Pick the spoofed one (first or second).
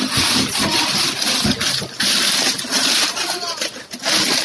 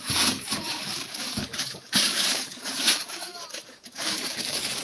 second